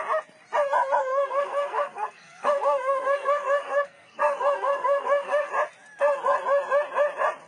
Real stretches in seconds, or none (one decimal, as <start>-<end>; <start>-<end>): 0.0-1.0; 5.5-7.5